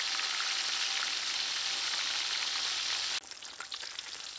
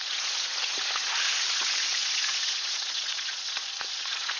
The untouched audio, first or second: first